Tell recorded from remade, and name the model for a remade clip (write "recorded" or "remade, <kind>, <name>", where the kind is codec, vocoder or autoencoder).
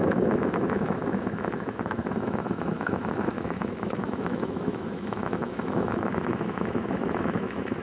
remade, autoencoder, DAC-VAE